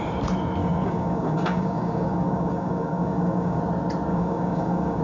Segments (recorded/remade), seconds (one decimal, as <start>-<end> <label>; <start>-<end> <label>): 0.0-0.6 recorded; 0.6-3.6 remade; 3.6-4.1 recorded; 4.1-5.0 remade